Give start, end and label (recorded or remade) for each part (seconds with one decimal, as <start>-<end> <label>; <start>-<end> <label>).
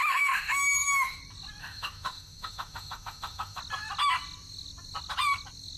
0.0-1.2 remade; 1.2-1.6 recorded; 1.6-3.6 remade; 3.6-5.8 recorded